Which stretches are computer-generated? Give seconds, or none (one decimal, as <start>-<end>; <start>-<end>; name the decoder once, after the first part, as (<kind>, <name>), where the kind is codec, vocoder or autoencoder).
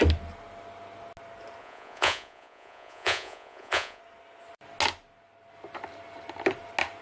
1.6-4.0 (vocoder, Vocos)